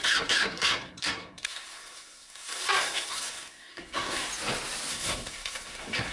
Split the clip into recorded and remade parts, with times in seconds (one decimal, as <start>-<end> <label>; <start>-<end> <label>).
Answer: 0.0-4.3 remade; 4.3-4.9 recorded; 4.9-6.1 remade